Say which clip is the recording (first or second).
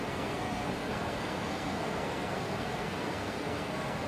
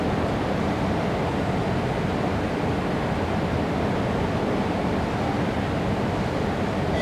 second